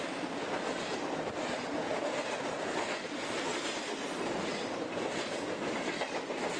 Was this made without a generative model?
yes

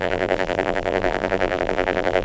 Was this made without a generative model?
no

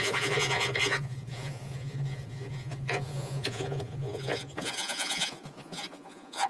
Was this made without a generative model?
no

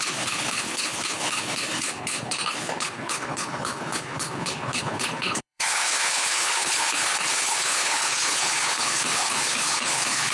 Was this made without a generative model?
no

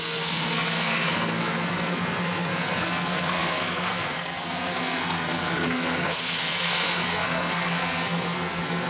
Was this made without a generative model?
no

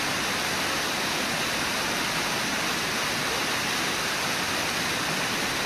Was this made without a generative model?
yes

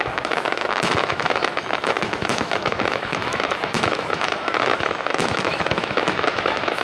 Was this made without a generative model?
no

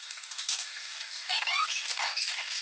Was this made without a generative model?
no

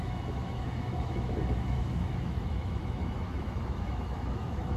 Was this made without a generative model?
no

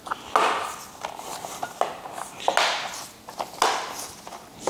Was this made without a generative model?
yes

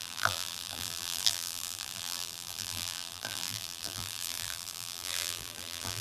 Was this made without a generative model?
no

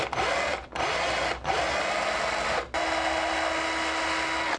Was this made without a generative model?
yes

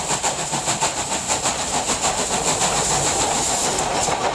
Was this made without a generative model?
yes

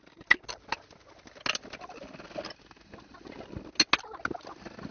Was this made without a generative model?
yes